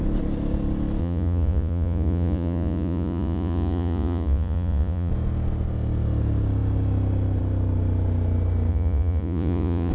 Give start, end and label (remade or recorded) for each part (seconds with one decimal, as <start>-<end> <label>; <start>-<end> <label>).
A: 0.0-1.0 recorded; 1.0-5.1 remade; 5.1-8.7 recorded; 8.7-9.9 remade